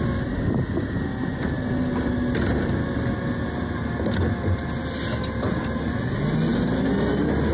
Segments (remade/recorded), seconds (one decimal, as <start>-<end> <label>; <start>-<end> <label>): 0.0-7.5 recorded